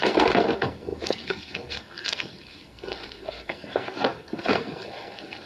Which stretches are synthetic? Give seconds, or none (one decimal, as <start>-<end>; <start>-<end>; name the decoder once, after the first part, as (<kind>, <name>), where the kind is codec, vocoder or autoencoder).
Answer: 0.0-5.5 (codec, SNAC)